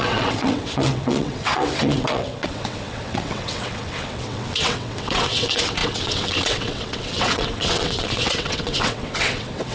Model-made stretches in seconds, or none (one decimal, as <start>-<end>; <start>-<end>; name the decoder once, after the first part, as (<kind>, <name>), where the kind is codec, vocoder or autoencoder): 0.0-9.7 (vocoder, WaveNeXt)